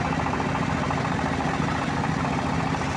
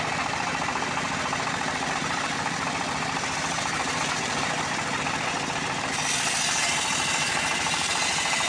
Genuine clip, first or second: first